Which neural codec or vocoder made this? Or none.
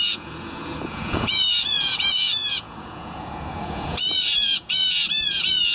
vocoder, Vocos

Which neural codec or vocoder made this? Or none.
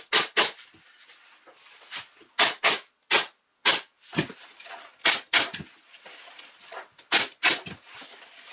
none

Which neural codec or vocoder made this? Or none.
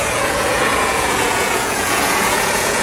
vocoder, Vocos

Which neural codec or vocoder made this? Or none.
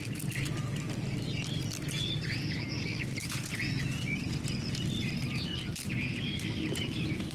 none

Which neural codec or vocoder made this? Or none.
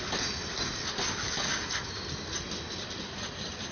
none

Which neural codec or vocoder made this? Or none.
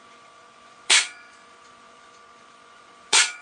vocoder, Vocos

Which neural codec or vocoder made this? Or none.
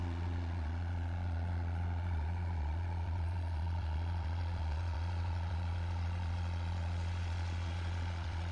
vocoder, Vocos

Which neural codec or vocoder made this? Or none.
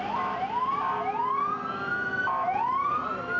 none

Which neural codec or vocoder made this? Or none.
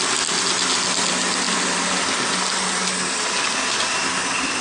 none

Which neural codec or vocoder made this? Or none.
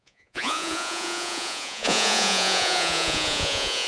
vocoder, Vocos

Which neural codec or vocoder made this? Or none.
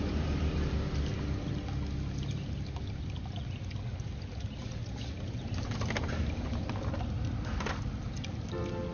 none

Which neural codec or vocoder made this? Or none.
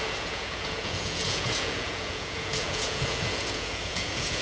vocoder, Vocos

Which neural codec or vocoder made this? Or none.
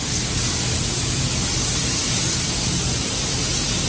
none